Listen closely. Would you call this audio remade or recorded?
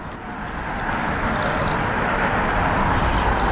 recorded